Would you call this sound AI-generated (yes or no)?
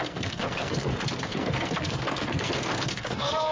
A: yes